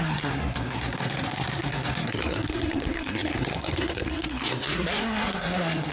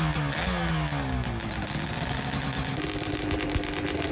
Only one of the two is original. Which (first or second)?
second